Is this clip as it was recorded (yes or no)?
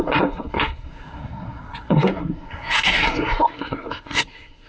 no